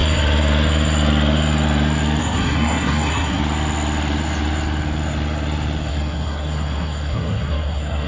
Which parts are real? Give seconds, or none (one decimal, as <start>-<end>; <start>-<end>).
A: 0.0-2.2; 3.4-5.9